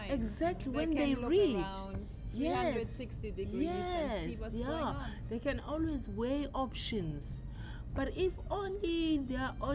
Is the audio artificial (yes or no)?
no